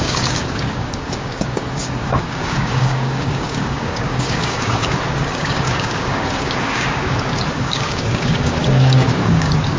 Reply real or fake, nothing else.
fake